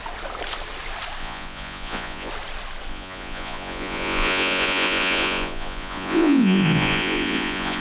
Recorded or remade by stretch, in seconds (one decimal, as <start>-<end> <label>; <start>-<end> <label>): 0.0-1.2 recorded; 1.2-2.3 remade; 2.3-2.9 recorded; 2.9-7.8 remade